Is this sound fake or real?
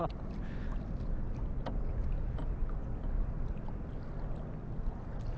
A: real